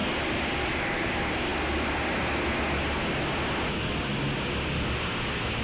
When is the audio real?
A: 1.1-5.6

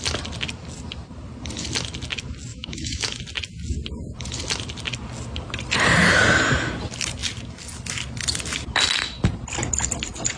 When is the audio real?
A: 0.0-2.5; 3.2-10.4

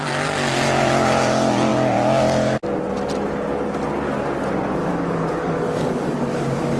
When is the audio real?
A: 0.0-4.8